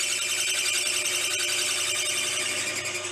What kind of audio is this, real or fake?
real